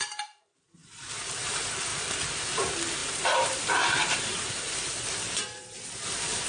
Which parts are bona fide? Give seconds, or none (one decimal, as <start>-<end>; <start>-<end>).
0.0-3.0; 4.9-6.5